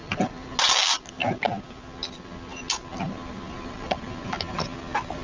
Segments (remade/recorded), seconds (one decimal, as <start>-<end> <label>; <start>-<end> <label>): 0.0-5.2 recorded